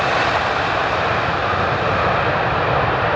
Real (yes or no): yes